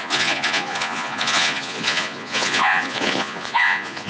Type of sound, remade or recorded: remade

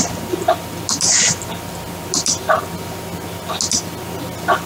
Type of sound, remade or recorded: recorded